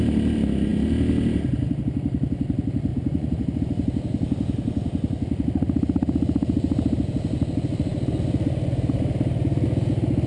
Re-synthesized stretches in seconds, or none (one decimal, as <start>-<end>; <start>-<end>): 2.9-3.6